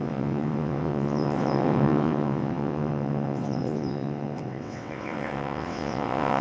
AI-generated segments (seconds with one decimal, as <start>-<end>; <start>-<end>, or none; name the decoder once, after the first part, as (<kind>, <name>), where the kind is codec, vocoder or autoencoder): 0.0-6.4 (vocoder, WaveNeXt)